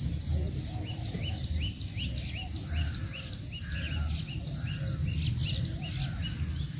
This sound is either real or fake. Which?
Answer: real